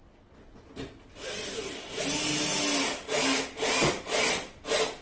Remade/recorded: recorded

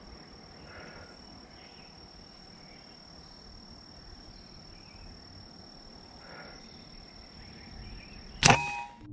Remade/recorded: recorded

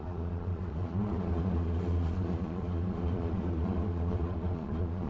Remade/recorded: remade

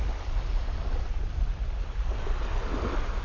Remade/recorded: recorded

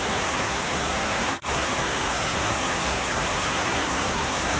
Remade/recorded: remade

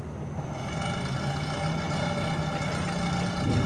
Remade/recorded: recorded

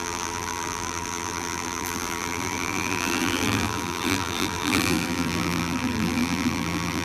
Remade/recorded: remade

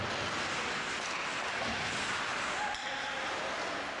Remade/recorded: recorded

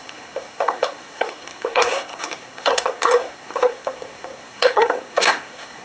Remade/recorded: remade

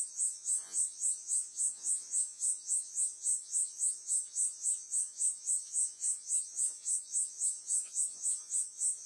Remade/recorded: remade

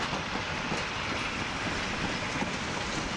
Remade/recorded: recorded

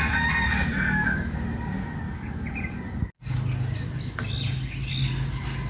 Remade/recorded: recorded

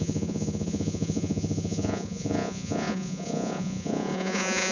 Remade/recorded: remade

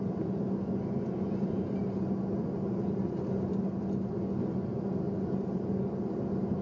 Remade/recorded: recorded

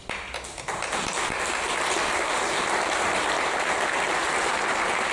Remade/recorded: recorded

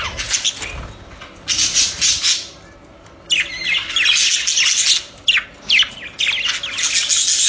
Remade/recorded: recorded